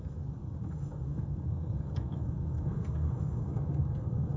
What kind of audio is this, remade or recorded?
remade